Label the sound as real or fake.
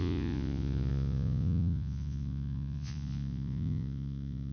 fake